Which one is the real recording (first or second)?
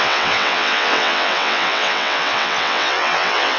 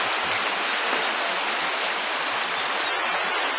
second